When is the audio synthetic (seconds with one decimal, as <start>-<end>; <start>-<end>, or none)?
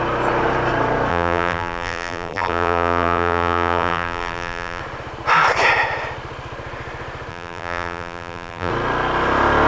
1.1-4.8; 7.3-8.7